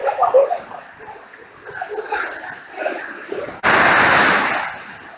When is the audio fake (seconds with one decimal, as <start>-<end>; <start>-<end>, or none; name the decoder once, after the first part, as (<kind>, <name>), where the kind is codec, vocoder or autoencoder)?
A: none